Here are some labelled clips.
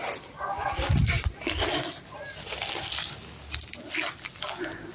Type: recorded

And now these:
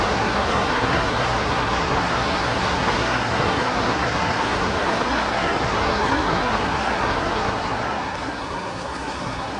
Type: remade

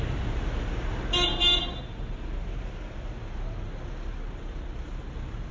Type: recorded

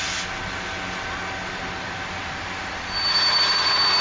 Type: recorded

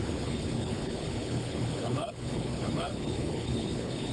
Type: remade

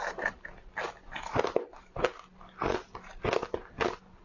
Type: recorded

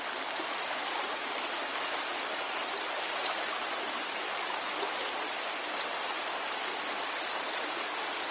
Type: recorded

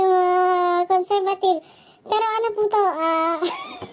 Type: recorded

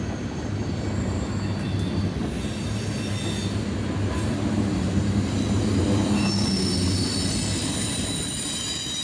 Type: recorded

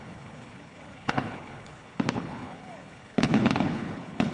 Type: remade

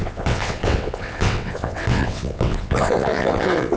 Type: remade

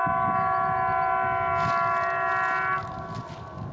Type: recorded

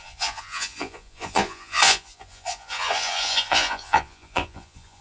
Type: remade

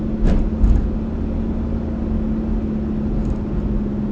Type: recorded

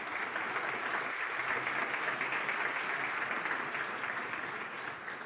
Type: recorded